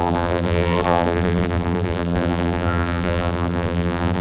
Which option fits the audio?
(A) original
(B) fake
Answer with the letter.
B